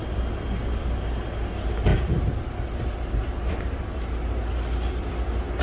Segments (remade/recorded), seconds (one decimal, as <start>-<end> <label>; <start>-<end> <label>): 0.0-5.6 recorded